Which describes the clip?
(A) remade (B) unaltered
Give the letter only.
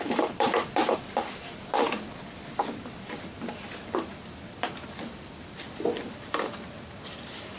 A